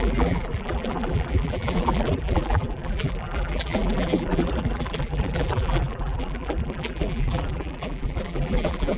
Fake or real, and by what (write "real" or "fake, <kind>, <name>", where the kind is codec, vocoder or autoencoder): fake, vocoder, BigVGAN v2